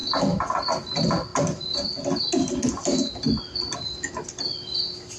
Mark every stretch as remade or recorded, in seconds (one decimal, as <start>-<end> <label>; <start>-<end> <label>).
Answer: 0.0-5.2 recorded